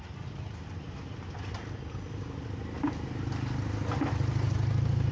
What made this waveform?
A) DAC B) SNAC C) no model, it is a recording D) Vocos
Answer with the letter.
C